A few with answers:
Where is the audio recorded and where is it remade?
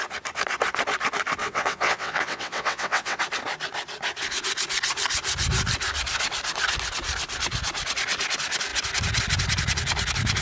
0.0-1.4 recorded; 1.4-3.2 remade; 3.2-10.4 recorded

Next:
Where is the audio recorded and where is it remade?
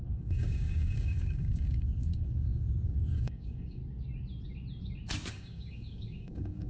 0.0-3.8 remade; 3.8-5.3 recorded; 5.3-6.7 remade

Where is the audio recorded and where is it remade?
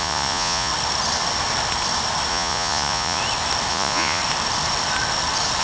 0.0-0.7 remade; 0.7-2.3 recorded; 2.3-3.2 remade; 3.2-3.7 recorded; 3.7-4.2 remade; 4.2-5.6 recorded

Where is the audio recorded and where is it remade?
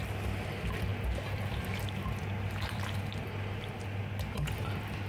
0.0-5.1 recorded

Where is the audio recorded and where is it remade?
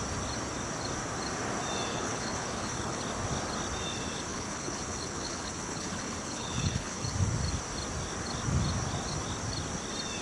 0.0-1.9 recorded; 1.9-3.0 remade; 3.0-4.3 recorded; 4.3-7.1 remade; 7.1-10.2 recorded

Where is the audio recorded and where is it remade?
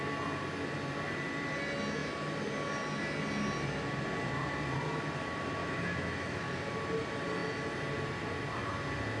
0.0-5.6 recorded; 5.6-6.5 remade; 6.5-9.2 recorded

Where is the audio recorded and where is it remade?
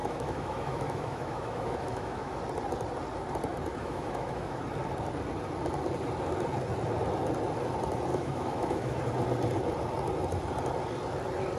0.0-2.4 remade; 2.4-3.8 recorded; 3.8-4.6 remade; 4.6-8.1 recorded; 8.1-9.0 remade; 9.0-11.6 recorded